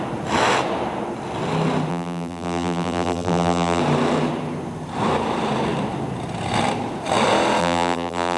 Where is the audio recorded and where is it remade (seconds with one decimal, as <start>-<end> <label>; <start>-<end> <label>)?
0.0-1.9 recorded; 1.9-3.8 remade; 3.8-7.6 recorded; 7.6-8.4 remade